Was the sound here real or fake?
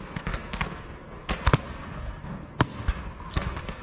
fake